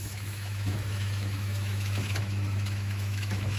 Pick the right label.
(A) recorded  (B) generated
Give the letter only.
B